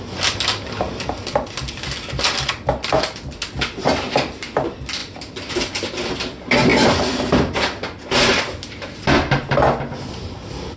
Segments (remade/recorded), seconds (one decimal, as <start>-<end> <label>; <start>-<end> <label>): 0.0-10.8 recorded